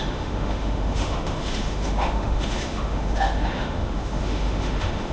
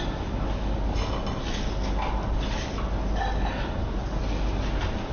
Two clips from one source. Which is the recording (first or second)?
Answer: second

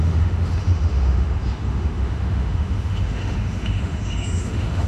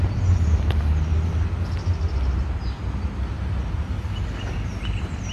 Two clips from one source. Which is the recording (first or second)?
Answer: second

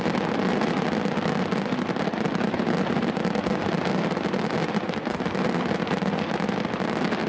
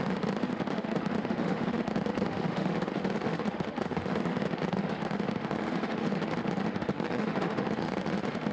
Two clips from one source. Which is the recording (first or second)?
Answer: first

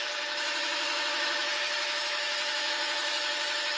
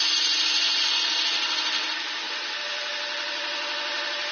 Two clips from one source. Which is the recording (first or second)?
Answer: second